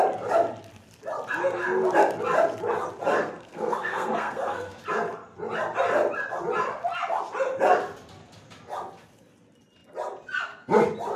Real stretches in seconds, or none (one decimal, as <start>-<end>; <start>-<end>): 0.0-3.2; 4.8-11.2